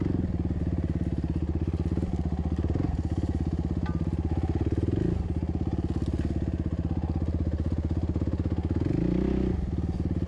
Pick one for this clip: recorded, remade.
recorded